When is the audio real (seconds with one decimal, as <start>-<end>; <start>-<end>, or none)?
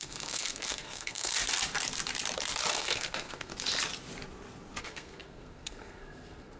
1.3-2.7; 3.5-4.8